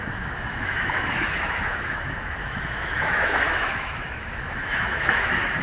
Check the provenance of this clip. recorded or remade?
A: remade